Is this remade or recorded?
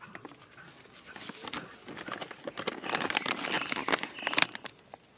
recorded